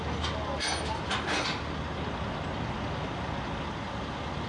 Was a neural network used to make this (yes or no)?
no